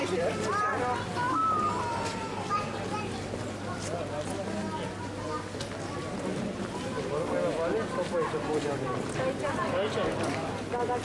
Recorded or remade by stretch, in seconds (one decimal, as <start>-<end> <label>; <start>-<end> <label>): 0.0-11.0 recorded